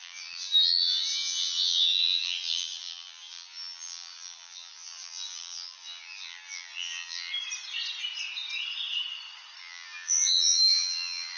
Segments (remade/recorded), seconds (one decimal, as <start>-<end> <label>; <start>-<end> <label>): 0.0-7.3 remade; 7.3-9.6 recorded; 9.6-11.4 remade